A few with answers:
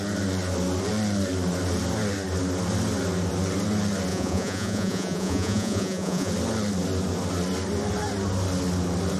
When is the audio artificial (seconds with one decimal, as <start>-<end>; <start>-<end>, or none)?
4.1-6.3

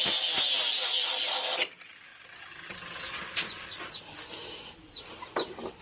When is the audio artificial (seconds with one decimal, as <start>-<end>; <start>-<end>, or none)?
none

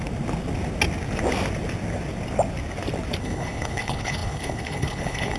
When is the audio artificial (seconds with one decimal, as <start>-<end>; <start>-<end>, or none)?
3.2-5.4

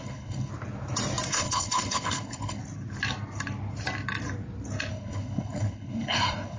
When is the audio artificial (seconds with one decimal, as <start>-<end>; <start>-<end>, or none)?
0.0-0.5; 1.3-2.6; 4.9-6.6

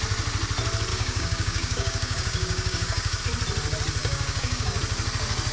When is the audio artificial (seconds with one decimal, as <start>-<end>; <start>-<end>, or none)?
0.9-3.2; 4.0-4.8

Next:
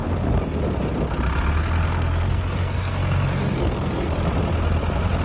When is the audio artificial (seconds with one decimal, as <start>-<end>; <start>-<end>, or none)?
1.6-4.2

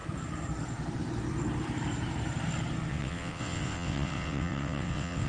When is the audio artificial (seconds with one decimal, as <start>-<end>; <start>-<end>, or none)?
2.9-5.3